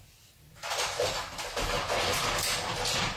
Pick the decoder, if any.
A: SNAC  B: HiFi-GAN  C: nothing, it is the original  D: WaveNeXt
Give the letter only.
C